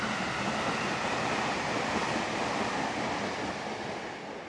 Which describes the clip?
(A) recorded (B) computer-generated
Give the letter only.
A